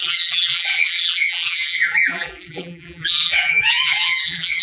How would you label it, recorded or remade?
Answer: remade